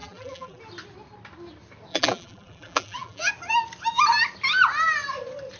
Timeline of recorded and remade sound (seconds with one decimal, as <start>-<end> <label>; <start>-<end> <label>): 0.0-0.6 remade; 0.6-1.9 recorded; 1.9-3.3 remade; 3.3-5.6 recorded